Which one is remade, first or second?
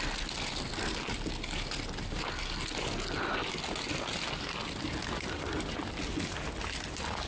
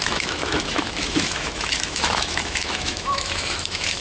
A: second